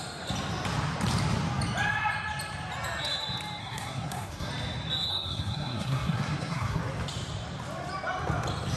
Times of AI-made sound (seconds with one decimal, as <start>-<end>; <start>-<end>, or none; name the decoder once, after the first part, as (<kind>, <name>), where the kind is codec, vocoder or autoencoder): 3.6-4.5 (codec, SNAC); 5.1-6.8

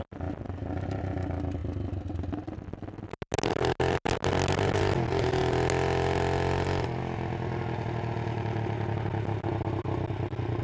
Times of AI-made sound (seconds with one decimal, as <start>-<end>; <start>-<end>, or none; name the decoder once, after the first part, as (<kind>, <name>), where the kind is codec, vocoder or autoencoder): none